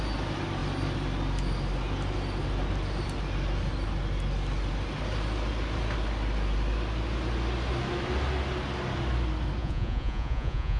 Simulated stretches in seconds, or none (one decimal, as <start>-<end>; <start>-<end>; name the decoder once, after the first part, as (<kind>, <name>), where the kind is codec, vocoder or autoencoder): 9.6-10.8 (vocoder, Vocos)

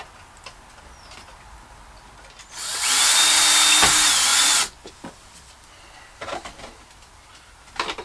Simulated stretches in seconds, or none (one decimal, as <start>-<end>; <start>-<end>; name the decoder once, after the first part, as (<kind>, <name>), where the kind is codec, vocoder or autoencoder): 4.3-4.9 (vocoder, Vocos)

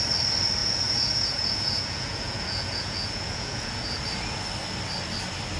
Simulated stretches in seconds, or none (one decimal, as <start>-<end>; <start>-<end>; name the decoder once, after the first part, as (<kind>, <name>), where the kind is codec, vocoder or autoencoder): 0.6-4.0 (vocoder, Vocos)

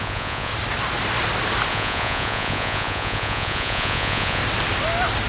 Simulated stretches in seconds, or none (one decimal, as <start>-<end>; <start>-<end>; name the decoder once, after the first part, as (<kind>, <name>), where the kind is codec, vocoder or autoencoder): 0.0-0.5 (vocoder, Vocos); 1.7-4.4

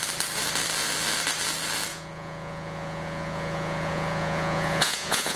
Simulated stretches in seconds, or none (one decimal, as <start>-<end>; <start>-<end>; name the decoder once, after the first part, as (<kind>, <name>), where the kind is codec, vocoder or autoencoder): 1.9-5.4 (vocoder, Vocos)

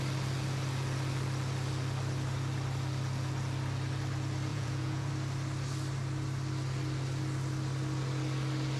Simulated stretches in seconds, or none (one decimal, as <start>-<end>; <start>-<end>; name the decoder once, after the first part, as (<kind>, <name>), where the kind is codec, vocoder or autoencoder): 4.5-5.1 (vocoder, Vocos)

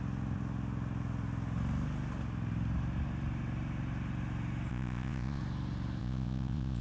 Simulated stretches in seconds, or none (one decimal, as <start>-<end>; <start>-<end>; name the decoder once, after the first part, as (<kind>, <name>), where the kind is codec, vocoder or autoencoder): 4.7-5.4 (vocoder, Vocos); 6.0-6.8

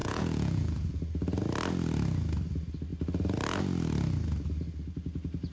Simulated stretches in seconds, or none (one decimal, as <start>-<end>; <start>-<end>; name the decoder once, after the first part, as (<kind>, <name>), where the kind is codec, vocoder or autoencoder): 0.0-1.0 (vocoder, Vocos)